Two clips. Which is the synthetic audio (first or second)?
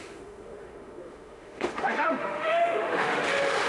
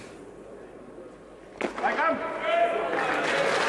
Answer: first